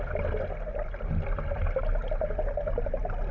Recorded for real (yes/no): yes